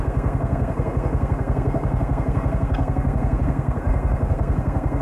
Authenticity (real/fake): fake